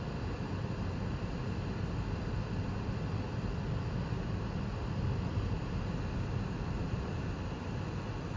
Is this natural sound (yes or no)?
yes